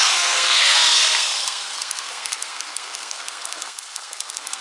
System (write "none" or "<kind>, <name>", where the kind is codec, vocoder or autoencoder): codec, SNAC